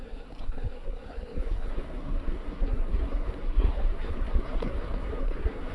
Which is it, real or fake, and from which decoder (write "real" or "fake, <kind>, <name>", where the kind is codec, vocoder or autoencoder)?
fake, codec, SNAC